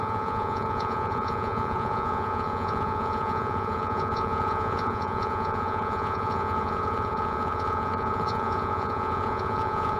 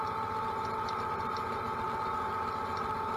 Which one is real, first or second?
second